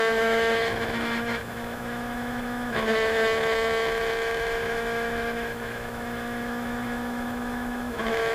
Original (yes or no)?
no